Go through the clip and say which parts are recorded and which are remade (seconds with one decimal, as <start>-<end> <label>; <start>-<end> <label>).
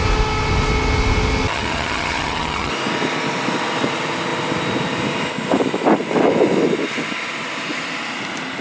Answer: 0.0-1.5 recorded; 1.5-2.7 remade; 2.7-8.6 recorded